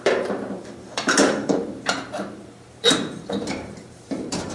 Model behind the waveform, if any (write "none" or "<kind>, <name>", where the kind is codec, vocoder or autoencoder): vocoder, BigVGAN v2